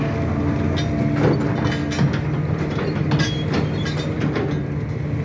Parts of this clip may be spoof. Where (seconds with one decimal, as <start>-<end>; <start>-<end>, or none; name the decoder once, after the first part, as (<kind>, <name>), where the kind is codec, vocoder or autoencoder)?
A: none